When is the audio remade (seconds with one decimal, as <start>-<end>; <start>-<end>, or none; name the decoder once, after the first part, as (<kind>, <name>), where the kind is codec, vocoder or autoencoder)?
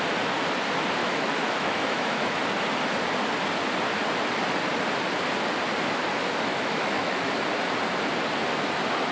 1.0-2.4 (autoencoder, DAC-VAE); 6.5-7.3